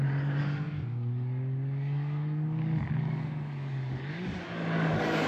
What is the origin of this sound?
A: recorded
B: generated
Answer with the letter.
B